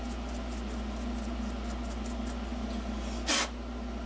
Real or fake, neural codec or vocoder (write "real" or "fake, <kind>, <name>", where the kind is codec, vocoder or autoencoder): real